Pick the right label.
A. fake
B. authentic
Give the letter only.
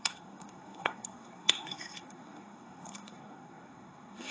A